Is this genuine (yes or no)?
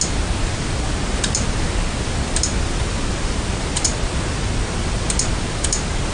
yes